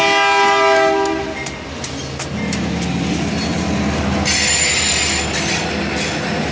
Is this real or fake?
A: real